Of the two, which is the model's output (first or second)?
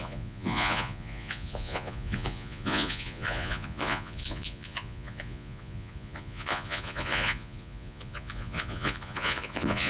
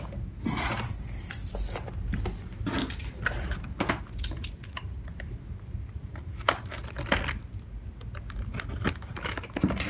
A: first